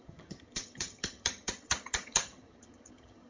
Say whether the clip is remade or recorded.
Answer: remade